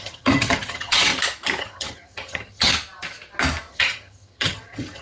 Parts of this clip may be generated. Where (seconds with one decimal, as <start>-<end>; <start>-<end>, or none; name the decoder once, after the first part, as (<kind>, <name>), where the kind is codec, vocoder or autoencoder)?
0.0-1.1 (vocoder, HiFi-GAN); 1.6-2.7; 3.7-5.0